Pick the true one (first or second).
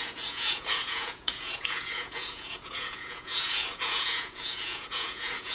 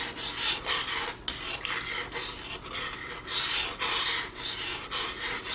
second